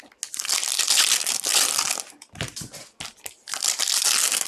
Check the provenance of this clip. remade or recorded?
recorded